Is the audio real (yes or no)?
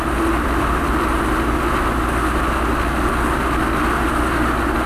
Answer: yes